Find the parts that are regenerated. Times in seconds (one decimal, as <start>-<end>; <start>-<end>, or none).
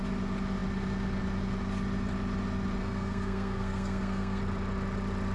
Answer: 2.8-4.4